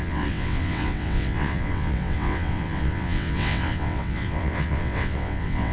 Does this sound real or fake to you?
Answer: fake